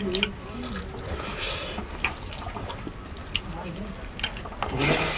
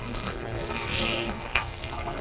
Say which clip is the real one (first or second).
first